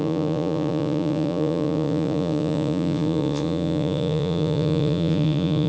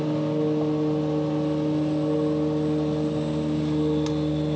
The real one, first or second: second